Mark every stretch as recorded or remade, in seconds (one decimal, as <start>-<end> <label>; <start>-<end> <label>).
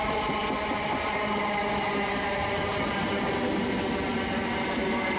0.0-5.2 recorded